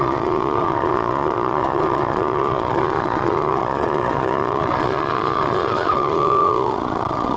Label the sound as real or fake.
fake